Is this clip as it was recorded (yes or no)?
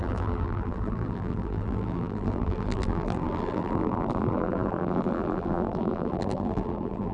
no